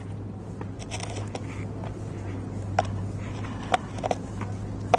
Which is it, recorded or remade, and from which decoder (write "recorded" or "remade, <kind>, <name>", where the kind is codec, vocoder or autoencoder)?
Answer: recorded